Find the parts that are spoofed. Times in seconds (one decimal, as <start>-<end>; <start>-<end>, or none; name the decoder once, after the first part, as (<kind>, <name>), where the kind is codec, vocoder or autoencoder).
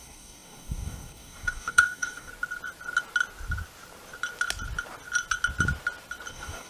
0.0-2.3 (codec, DAC); 6.3-6.7